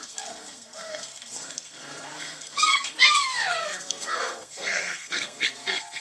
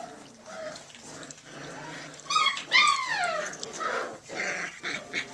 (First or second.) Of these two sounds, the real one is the second